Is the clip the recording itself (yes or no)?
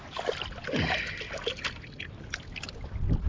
yes